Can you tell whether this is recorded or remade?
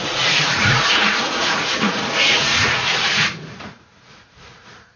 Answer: remade